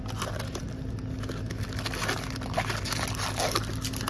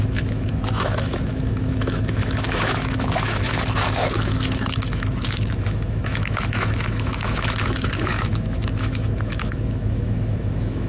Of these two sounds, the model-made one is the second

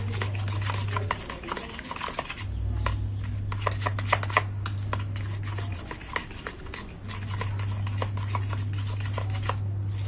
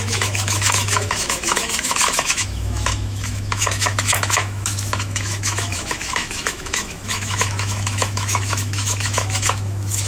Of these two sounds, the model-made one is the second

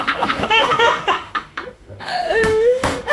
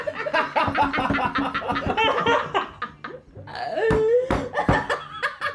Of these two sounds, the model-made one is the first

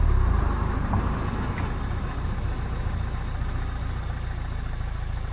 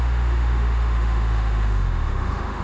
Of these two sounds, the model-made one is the second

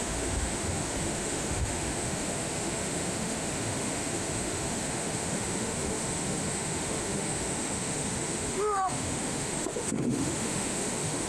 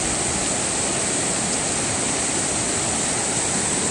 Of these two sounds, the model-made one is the first